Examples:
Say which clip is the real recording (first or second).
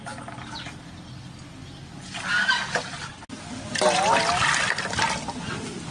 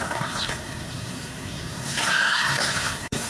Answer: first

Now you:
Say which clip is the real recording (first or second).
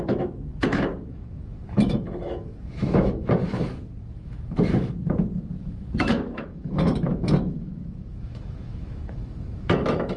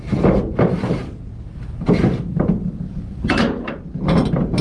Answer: second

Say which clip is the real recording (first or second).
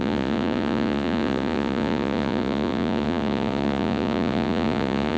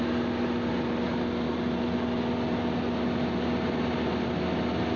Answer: second